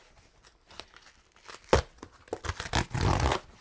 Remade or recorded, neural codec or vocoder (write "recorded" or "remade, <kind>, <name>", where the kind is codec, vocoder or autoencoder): recorded